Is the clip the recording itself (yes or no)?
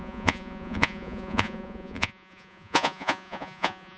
no